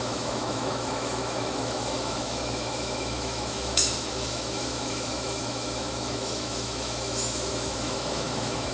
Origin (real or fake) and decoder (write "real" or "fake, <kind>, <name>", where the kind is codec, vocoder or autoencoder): fake, autoencoder, DAC-VAE